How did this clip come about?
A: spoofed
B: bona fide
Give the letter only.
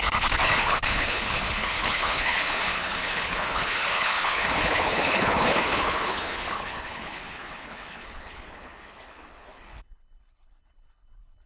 A